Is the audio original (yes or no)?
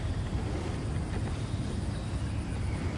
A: yes